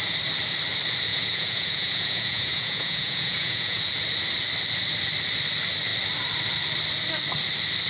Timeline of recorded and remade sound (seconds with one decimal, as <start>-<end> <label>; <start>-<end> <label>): 0.0-1.1 recorded; 1.1-3.8 remade; 3.8-7.9 recorded